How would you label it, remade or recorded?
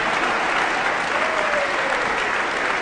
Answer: recorded